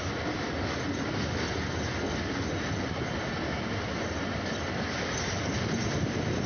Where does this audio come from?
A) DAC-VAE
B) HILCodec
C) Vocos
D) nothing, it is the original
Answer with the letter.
D